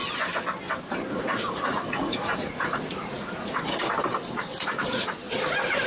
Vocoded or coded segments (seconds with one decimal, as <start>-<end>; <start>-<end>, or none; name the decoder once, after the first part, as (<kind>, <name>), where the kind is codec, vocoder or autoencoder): 1.1-3.8 (vocoder, Vocos); 4.5-5.1

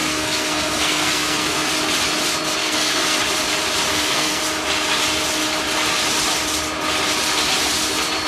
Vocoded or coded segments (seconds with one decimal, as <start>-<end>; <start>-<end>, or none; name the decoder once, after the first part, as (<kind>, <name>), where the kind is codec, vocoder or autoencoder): 0.0-1.7 (codec, SNAC); 2.6-3.2; 3.9-4.4

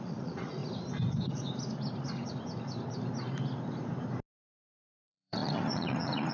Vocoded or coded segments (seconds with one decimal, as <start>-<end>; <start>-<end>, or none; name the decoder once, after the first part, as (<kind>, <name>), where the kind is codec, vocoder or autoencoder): 0.0-0.6 (vocoder, Vocos); 4.4-6.3

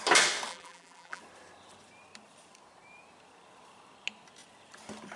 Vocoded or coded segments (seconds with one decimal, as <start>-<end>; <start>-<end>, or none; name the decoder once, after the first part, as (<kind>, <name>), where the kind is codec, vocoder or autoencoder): 0.5-1.2 (vocoder, BigVGAN v2)

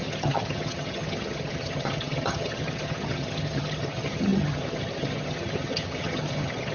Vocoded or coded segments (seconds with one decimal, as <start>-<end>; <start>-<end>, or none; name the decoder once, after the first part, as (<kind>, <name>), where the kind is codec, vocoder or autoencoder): 0.0-6.7 (vocoder, HiFi-GAN)

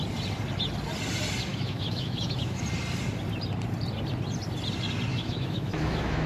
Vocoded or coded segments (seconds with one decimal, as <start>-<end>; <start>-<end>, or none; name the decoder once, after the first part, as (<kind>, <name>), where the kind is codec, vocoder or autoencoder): 1.5-2.6 (autoencoder, DAC-VAE); 5.1-6.3